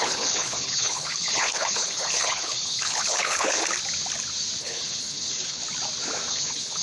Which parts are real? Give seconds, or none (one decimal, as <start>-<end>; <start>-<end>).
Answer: 3.6-4.6; 5.6-6.3